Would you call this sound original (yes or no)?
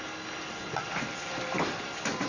yes